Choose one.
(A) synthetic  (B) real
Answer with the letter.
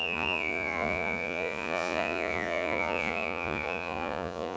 A